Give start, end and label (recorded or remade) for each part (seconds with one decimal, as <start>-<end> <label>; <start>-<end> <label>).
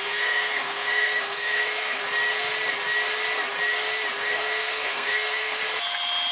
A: 0.0-2.0 remade; 2.0-4.2 recorded; 4.2-5.6 remade; 5.6-6.3 recorded